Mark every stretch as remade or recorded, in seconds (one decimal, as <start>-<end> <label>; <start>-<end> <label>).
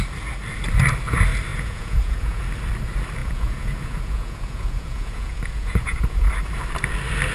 0.0-1.5 recorded; 1.5-2.4 remade; 2.4-3.2 recorded; 3.2-6.3 remade; 6.3-7.3 recorded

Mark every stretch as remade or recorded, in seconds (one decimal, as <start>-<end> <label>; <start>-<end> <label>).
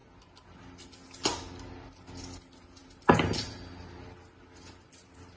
0.0-5.4 recorded